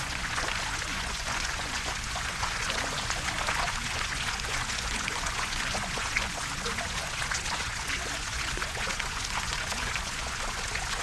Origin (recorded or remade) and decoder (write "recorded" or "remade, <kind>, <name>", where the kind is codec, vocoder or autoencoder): remade, vocoder, Vocos